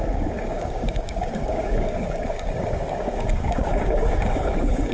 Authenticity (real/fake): fake